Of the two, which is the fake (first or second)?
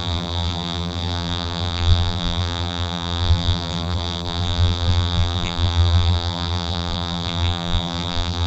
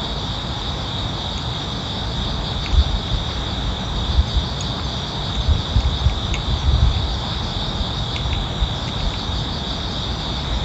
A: first